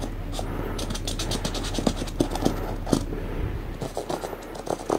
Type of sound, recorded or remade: recorded